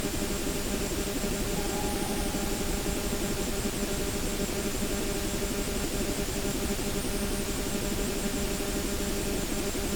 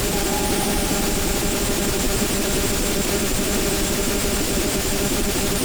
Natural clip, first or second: first